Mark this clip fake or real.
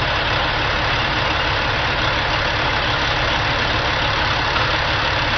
real